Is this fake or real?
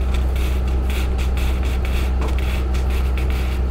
real